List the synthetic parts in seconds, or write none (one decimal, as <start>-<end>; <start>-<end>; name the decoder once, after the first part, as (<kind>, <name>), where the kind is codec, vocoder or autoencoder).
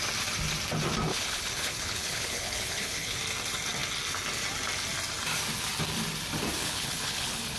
1.1-3.2 (codec, HILCodec); 6.6-7.6